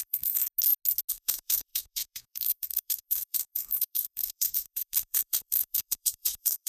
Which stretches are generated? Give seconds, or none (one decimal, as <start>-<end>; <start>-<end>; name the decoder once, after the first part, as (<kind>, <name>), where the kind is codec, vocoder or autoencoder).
0.0-0.4 (codec, SNAC); 1.1-6.7